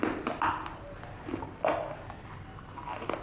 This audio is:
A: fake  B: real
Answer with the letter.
B